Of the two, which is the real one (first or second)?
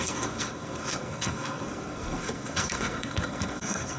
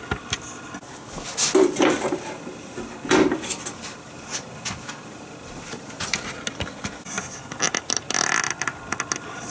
second